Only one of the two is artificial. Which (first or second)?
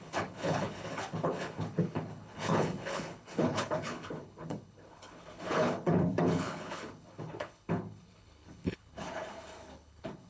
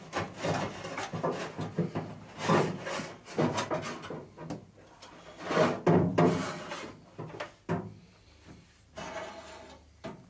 first